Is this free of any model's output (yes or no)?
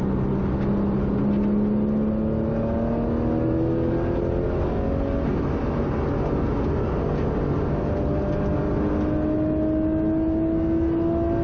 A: yes